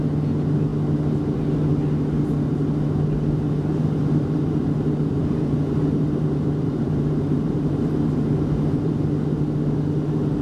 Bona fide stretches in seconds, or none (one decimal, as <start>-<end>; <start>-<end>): 0.0-3.7; 8.9-10.4